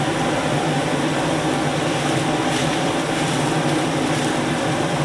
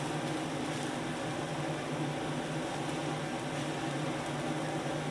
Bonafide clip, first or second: second